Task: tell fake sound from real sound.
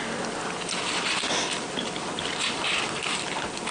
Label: real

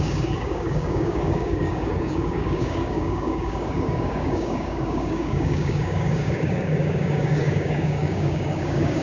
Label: fake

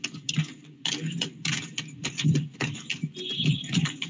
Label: real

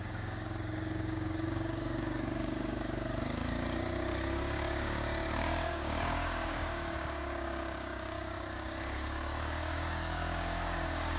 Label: fake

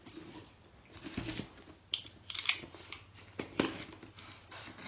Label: real